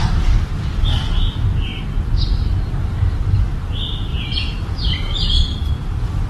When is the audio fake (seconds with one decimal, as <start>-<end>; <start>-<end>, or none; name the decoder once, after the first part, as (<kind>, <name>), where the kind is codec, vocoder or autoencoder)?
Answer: 4.1-4.9 (vocoder, Vocos)

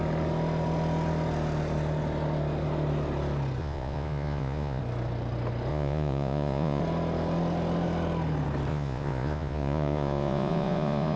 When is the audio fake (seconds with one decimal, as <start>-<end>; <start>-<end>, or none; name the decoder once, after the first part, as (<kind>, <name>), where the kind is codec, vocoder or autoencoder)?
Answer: 3.6-4.8 (vocoder, Vocos); 5.7-6.8; 8.7-11.2

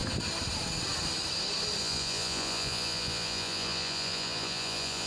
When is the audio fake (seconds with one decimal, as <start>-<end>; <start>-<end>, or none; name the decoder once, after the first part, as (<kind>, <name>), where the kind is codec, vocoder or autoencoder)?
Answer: 1.8-5.1 (vocoder, Vocos)

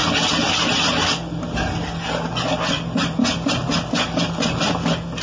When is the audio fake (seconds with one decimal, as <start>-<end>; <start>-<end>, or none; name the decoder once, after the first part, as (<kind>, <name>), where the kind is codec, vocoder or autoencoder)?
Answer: none

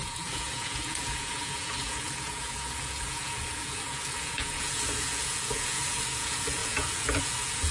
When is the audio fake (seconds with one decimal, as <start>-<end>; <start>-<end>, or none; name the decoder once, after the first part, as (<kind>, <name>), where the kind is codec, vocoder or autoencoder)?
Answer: 0.0-7.7 (vocoder, Vocos)